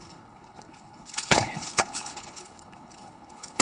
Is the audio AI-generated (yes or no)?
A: yes